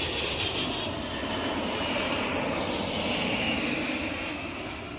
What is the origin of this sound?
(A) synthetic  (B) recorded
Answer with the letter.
B